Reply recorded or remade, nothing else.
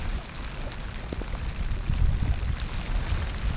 recorded